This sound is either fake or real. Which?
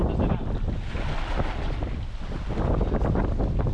real